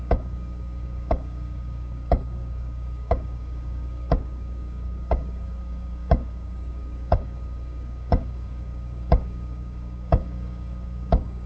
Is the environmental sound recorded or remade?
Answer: remade